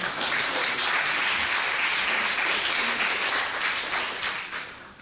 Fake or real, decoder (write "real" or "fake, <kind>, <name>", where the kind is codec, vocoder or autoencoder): real